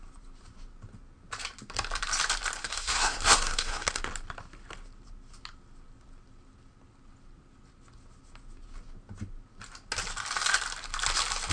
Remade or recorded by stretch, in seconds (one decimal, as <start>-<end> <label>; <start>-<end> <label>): 0.0-2.6 recorded; 2.6-4.0 remade; 4.0-11.5 recorded